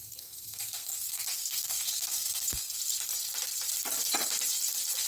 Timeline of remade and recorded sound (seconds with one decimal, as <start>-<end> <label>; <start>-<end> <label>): 0.0-2.8 remade; 2.8-5.1 recorded